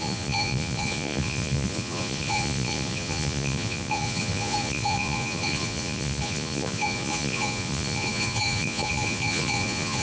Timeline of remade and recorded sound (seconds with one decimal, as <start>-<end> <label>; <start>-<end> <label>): 0.0-10.0 remade